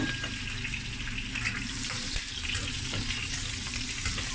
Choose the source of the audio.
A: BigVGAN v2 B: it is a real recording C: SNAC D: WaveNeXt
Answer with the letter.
B